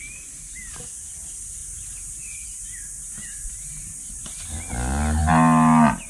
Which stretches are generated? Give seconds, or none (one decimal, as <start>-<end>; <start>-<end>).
1.6-2.1; 3.7-4.3